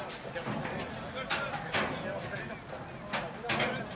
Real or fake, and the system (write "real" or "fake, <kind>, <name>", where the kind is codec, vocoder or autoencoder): real